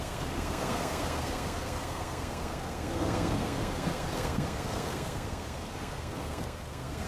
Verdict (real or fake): fake